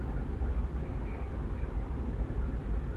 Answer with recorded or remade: recorded